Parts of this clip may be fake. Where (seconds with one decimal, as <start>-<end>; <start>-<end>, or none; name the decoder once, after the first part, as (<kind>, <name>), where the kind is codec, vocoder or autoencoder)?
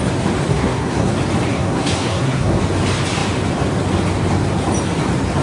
0.5-1.1 (codec, SNAC); 1.5-2.6